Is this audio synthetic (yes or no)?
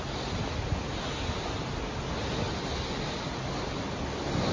no